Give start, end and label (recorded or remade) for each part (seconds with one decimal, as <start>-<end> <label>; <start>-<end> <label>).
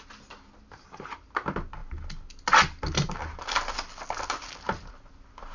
0.0-5.5 recorded